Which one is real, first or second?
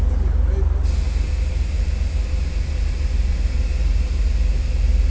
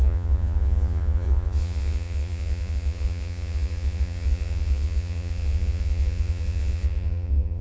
first